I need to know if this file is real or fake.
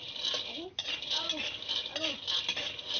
real